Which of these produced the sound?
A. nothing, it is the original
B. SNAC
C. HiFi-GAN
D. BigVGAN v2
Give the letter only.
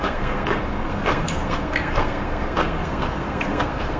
B